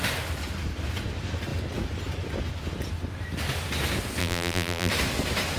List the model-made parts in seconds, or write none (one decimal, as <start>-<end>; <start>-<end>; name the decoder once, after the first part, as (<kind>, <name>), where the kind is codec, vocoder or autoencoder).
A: 4.2-4.9 (vocoder, BigVGAN v2)